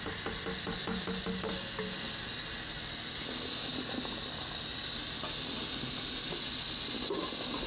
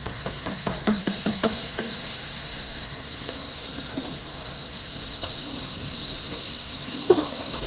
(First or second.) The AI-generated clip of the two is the second